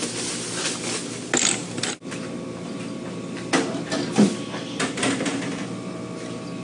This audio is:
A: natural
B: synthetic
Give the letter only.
A